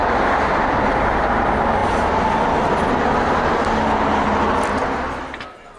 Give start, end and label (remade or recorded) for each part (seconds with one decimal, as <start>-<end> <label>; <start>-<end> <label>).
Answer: 0.0-0.7 remade; 0.7-5.8 recorded